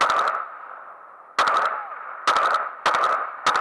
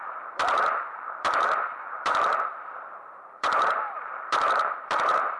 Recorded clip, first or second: first